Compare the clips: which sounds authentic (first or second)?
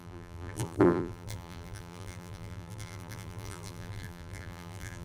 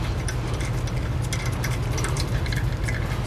second